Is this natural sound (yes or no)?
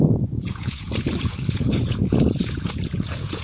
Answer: no